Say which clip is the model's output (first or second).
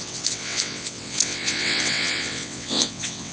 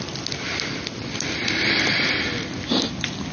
first